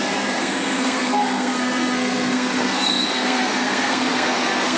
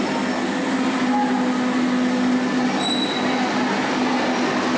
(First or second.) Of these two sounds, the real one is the second